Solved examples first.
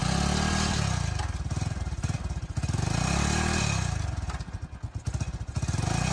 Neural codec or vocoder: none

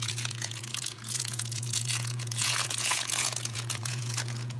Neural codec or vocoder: vocoder, Vocos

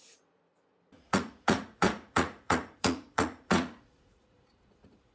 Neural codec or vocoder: vocoder, Vocos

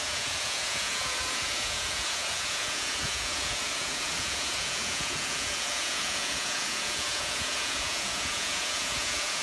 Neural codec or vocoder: vocoder, Vocos